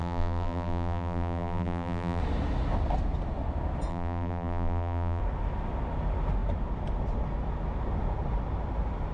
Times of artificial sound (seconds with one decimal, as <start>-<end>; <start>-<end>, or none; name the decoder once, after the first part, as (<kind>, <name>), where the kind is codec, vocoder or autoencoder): 0.0-2.2 (vocoder, BigVGAN v2); 3.9-5.2